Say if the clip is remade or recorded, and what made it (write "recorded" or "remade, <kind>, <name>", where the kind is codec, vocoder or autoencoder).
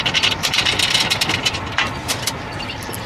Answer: remade, vocoder, BigVGAN v2